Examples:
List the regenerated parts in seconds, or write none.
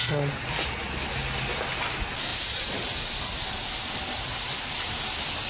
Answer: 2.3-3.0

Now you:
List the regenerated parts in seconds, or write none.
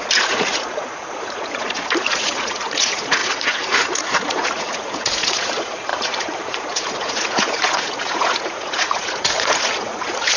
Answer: 0.0-10.4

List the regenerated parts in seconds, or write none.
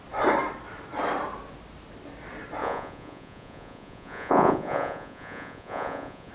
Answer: 2.6-6.3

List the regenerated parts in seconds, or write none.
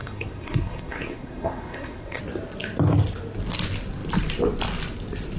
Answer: 0.0-2.2